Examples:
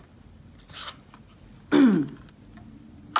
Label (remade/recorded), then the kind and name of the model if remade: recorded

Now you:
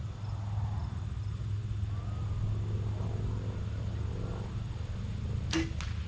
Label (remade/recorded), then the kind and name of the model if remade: recorded